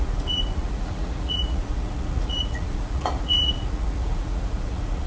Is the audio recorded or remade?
remade